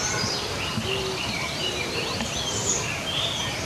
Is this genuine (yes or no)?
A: yes